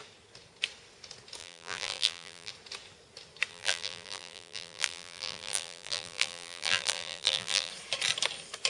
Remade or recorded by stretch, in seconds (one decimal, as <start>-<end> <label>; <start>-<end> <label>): 0.0-1.4 recorded; 1.4-2.5 remade; 2.5-3.5 recorded; 3.5-7.7 remade; 7.7-8.7 recorded